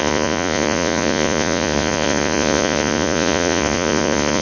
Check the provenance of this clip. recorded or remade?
remade